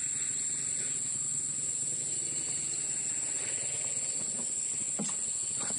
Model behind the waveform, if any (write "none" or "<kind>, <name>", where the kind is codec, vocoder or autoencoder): none